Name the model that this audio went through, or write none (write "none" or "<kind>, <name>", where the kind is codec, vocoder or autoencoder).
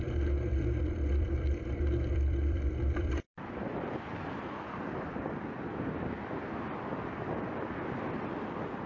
vocoder, BigVGAN v2